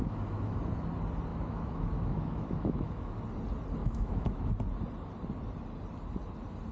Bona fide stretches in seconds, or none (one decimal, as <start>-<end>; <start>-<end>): 0.6-1.3; 3.2-3.8; 4.5-6.7